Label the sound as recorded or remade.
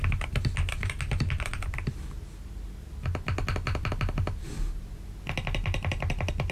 recorded